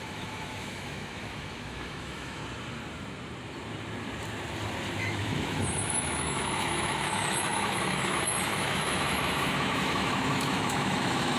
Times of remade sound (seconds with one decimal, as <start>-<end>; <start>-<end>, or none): 0.0-2.4; 5.0-11.4